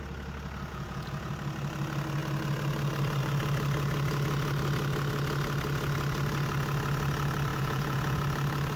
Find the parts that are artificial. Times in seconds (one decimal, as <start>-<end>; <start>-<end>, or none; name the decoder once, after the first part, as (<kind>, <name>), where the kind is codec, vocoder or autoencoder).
0.7-1.3 (vocoder, Vocos); 7.5-8.2